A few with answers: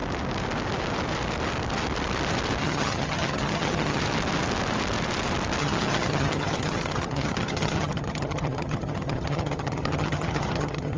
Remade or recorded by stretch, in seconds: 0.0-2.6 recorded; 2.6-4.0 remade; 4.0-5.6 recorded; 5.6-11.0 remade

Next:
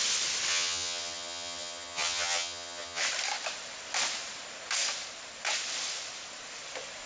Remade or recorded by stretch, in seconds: 0.0-0.5 recorded; 0.5-3.0 remade; 3.0-7.1 recorded

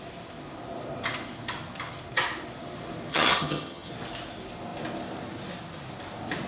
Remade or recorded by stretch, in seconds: 0.0-3.1 recorded; 3.1-3.9 remade; 3.9-6.5 recorded

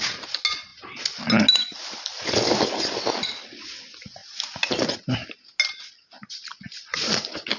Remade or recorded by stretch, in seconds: 0.0-7.6 recorded

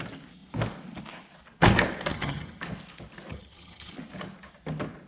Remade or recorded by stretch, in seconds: 0.0-2.1 recorded; 2.1-2.6 remade; 2.6-3.3 recorded; 3.3-3.9 remade; 3.9-5.1 recorded

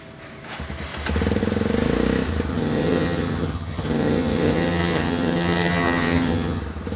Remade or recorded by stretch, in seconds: 0.0-2.5 recorded; 2.5-6.6 remade; 6.6-7.0 recorded

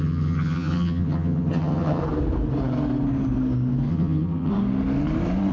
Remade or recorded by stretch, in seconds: 0.0-2.0 remade; 2.0-3.9 recorded; 3.9-4.5 remade; 4.5-5.5 recorded

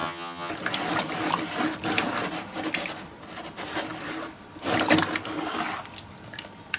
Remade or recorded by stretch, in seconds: 0.0-0.5 remade; 0.5-6.8 recorded